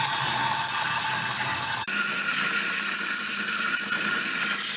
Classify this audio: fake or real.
real